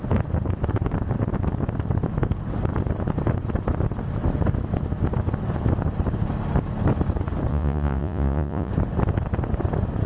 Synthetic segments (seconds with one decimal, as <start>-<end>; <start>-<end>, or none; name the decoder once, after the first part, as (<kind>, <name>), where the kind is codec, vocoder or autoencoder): 7.5-8.7 (vocoder, Vocos)